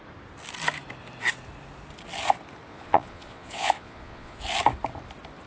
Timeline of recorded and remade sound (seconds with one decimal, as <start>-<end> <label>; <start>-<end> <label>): 0.0-2.7 recorded; 2.7-4.4 remade; 4.4-5.5 recorded